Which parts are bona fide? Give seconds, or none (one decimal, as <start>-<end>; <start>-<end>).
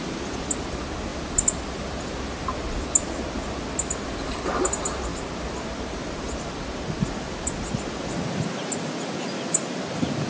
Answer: 0.0-10.3